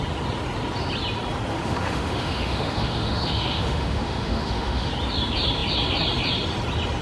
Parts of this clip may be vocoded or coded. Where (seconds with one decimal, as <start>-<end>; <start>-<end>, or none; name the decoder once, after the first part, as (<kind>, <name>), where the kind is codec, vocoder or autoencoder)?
1.5-4.9 (autoencoder, DAC-VAE)